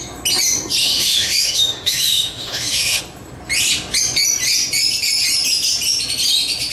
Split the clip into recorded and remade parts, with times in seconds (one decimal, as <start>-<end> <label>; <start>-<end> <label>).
0.0-0.8 recorded; 0.8-3.0 remade; 3.0-6.7 recorded